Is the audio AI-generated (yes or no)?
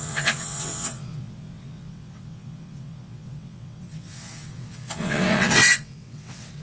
yes